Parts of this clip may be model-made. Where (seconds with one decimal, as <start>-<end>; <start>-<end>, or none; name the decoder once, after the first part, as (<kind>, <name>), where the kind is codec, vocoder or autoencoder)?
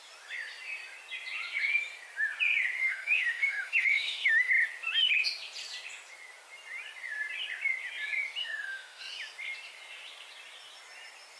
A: 2.8-4.5 (autoencoder, DAC-VAE); 8.4-9.0